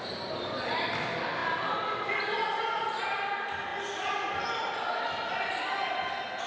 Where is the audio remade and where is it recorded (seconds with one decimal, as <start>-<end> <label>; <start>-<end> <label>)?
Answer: 0.0-6.5 recorded

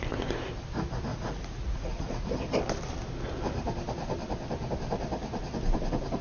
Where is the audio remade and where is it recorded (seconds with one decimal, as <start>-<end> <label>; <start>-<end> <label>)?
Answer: 0.0-1.1 recorded; 1.1-2.3 remade; 2.3-6.2 recorded

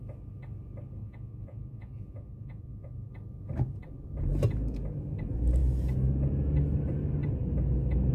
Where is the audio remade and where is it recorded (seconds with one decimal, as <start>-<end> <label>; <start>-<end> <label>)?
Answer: 0.0-1.0 recorded; 1.0-3.1 remade; 3.1-8.1 recorded

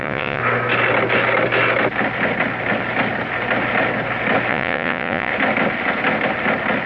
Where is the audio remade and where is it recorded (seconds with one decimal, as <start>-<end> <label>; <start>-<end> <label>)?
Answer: 0.0-0.4 remade; 0.4-4.5 recorded; 4.5-5.3 remade; 5.3-6.9 recorded

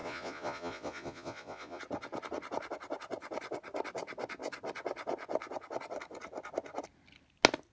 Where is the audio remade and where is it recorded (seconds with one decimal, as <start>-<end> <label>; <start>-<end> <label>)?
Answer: 0.0-1.8 remade; 1.8-7.7 recorded